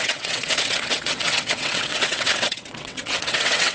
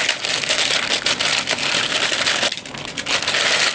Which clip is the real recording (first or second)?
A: second